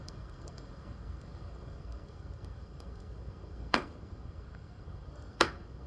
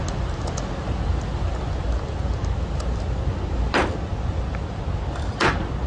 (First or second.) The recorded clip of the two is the second